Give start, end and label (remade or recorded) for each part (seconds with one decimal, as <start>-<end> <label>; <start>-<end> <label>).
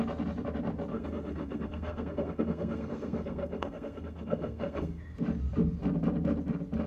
0.0-0.9 recorded; 0.9-5.0 remade; 5.0-6.9 recorded